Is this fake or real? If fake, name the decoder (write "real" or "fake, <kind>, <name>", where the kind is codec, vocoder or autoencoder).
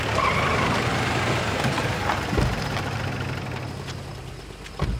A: real